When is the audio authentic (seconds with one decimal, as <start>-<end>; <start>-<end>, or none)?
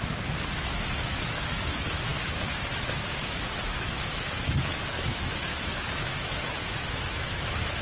none